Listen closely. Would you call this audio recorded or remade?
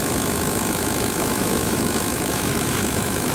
remade